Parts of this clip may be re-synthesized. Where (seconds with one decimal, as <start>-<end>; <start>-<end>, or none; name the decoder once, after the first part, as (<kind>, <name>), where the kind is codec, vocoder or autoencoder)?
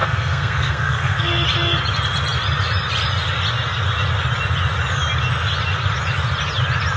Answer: 0.0-1.3 (codec, SNAC)